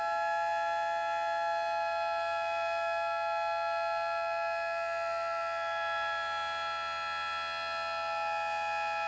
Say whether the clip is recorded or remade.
recorded